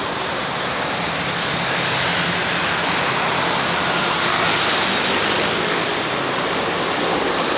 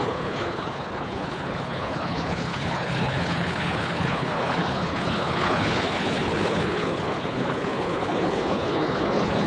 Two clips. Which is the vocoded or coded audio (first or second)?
second